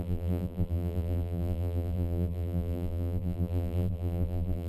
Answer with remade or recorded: remade